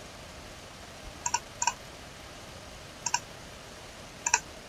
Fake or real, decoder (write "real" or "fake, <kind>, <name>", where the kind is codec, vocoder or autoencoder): fake, vocoder, BigVGAN v2